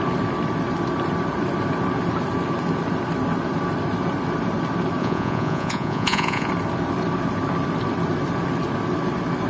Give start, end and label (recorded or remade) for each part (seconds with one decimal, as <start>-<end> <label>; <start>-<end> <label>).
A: 0.0-5.0 recorded; 5.0-6.5 remade; 6.5-9.5 recorded